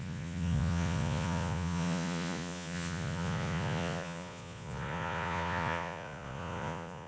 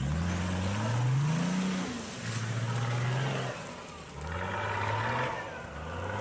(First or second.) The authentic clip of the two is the second